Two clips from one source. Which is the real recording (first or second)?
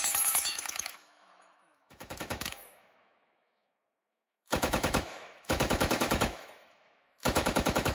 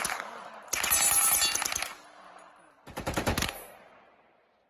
second